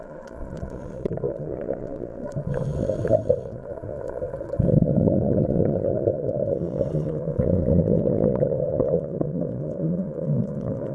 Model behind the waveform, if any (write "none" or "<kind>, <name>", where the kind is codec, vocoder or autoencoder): vocoder, Vocos